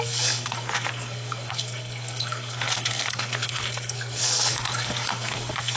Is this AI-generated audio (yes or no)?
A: yes